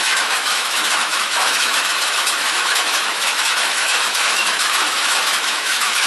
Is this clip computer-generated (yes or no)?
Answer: yes